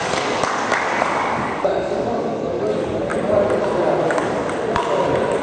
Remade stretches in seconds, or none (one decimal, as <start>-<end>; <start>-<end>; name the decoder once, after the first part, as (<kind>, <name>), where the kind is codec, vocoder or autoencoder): 0.0-3.1 (codec, DAC); 4.0-4.4